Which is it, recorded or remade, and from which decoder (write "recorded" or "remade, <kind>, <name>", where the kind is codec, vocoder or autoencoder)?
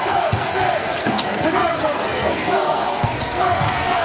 remade, codec, SNAC